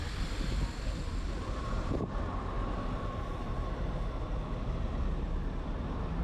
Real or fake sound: real